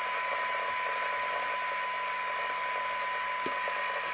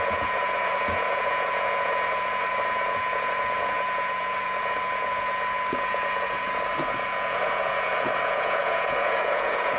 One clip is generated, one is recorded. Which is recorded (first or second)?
first